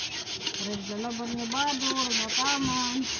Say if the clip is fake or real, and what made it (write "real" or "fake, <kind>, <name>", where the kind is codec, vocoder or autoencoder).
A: real